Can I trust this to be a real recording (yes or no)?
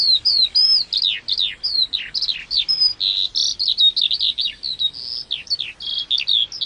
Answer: yes